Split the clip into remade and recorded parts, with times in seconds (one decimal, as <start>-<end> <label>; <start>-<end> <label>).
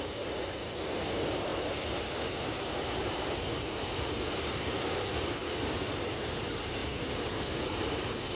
0.0-5.4 remade; 5.4-6.1 recorded; 6.1-6.8 remade; 6.8-7.5 recorded; 7.5-8.4 remade